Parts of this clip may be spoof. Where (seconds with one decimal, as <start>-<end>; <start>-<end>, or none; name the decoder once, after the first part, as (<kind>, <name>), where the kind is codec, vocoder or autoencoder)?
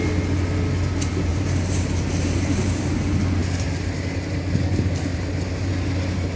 1.3-2.9 (vocoder, BigVGAN v2); 5.1-5.7